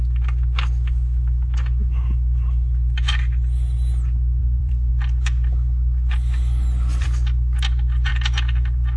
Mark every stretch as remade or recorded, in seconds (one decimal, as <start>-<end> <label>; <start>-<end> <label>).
0.0-4.4 recorded; 4.4-4.9 remade; 4.9-9.0 recorded